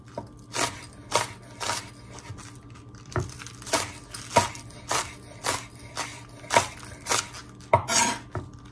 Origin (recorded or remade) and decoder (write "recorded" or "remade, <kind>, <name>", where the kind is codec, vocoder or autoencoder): recorded